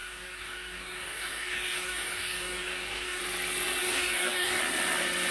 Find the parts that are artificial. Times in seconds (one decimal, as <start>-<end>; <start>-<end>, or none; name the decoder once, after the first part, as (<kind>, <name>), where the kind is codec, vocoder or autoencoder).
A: 0.0-3.2 (codec, DAC); 3.8-4.6